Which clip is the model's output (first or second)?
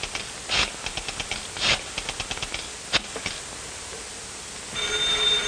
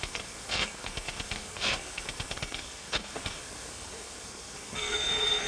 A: second